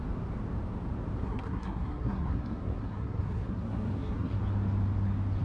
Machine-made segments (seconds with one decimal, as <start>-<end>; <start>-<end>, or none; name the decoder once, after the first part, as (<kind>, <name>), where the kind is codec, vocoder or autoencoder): 1.2-4.4 (codec, SNAC)

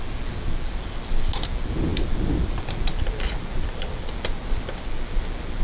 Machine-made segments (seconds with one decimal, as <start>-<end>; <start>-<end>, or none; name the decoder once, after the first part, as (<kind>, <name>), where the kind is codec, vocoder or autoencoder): none